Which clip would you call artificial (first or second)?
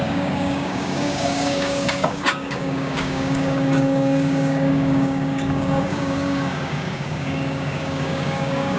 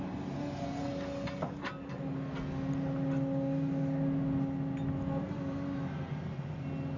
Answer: first